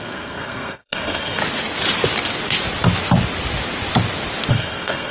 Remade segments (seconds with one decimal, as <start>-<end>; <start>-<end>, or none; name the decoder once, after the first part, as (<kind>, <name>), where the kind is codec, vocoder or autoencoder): 0.0-1.4 (codec, SNAC); 4.5-5.1